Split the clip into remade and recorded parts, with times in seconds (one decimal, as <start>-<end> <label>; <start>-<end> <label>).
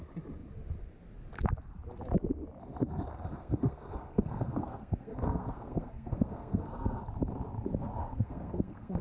0.0-3.1 recorded; 3.1-7.0 remade; 7.0-8.0 recorded; 8.0-9.0 remade